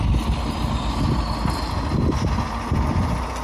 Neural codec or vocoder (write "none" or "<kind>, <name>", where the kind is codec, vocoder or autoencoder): none